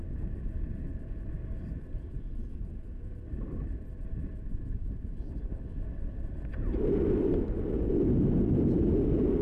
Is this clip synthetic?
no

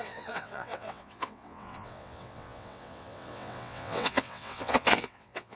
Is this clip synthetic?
yes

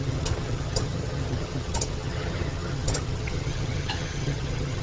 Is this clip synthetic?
yes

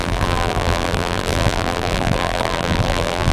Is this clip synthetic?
yes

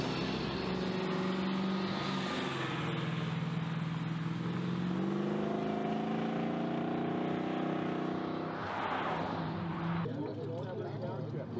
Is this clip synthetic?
no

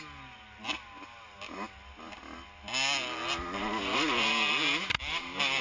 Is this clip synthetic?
no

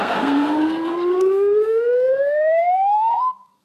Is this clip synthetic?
yes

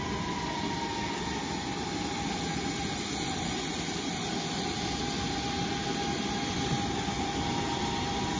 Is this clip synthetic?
no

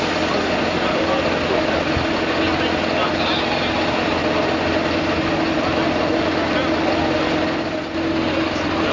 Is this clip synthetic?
no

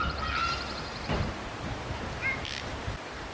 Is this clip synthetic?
no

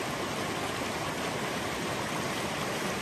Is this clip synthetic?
no